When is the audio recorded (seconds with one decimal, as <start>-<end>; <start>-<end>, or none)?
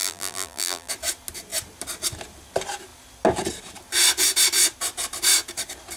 0.9-6.0